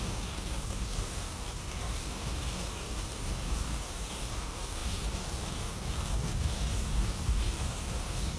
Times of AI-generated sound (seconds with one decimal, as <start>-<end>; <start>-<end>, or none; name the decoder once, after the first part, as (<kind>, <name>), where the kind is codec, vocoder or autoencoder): 0.0-8.4 (codec, DAC)